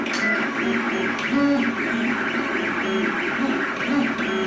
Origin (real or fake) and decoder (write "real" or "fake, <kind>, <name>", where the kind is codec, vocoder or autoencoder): real